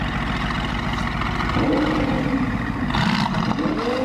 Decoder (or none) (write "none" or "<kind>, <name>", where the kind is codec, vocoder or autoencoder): none